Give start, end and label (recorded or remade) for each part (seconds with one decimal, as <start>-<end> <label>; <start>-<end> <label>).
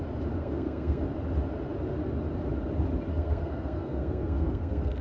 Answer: 0.0-0.4 recorded; 0.4-1.0 remade; 1.0-3.1 recorded; 3.1-5.0 remade